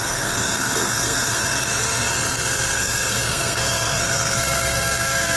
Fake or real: fake